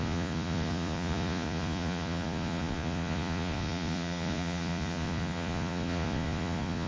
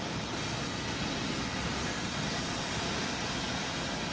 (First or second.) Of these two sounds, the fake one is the first